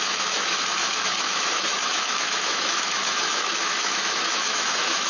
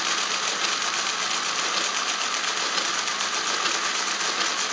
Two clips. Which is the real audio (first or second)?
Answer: second